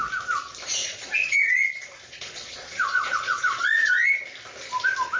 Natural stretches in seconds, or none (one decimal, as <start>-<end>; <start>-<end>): 0.0-0.8; 3.9-5.2